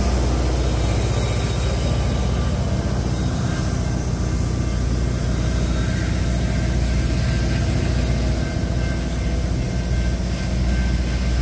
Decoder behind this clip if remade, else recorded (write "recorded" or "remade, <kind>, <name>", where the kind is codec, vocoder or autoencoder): recorded